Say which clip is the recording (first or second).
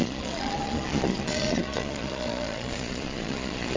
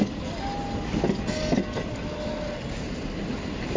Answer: second